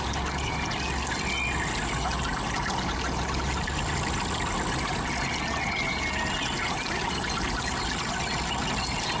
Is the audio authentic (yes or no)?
yes